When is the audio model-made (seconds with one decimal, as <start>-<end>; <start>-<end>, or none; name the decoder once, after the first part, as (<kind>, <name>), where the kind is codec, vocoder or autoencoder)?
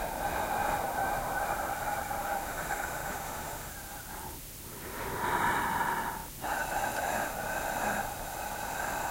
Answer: 2.2-3.7 (autoencoder, DAC-VAE)